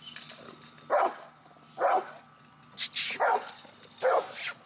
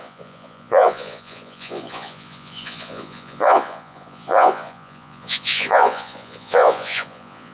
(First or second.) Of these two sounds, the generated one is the second